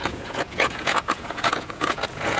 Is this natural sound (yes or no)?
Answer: no